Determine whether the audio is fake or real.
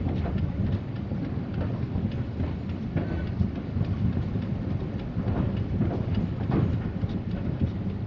real